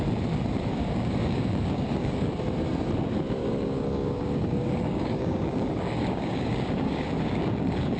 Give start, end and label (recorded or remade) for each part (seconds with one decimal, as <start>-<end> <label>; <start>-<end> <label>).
0.0-0.7 recorded; 0.7-2.3 remade; 2.3-3.4 recorded; 3.4-8.0 remade